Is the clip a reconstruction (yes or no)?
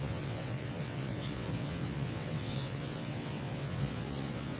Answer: yes